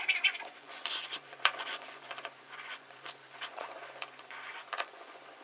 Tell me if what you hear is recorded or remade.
remade